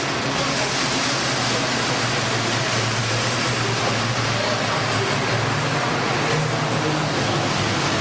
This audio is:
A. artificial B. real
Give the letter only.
B